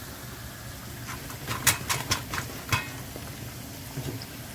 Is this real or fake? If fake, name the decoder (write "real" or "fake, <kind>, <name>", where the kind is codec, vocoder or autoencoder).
real